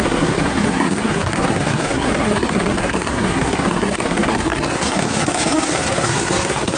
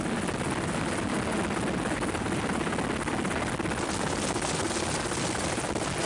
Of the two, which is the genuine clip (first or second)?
second